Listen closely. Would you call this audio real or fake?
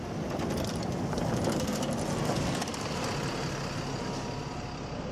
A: real